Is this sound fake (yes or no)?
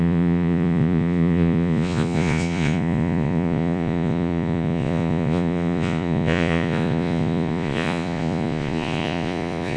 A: yes